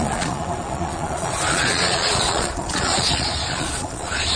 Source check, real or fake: fake